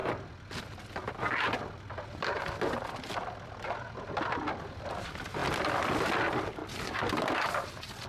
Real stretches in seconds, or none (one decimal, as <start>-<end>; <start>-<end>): 0.0-8.1